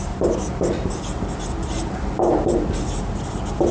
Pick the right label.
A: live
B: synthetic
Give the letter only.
A